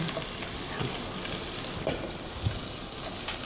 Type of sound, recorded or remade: recorded